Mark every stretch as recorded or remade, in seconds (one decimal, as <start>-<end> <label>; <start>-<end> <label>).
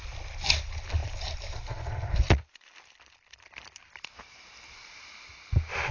0.0-5.9 recorded